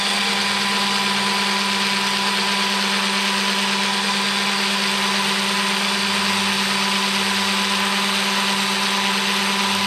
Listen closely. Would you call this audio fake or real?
real